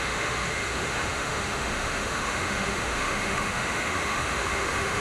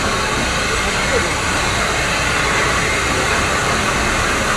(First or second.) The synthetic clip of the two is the first